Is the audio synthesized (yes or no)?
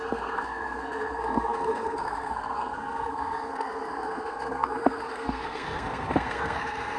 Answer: yes